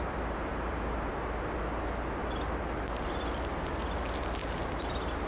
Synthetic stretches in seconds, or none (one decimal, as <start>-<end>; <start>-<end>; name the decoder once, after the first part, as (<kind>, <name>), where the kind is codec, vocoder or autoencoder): none